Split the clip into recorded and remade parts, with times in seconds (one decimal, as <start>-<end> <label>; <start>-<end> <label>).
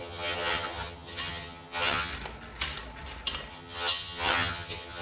0.0-2.1 remade; 2.1-3.5 recorded; 3.5-5.0 remade